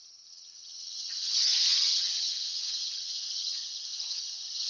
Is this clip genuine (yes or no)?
no